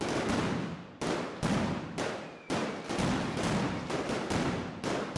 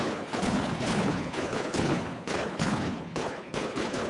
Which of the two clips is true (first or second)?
first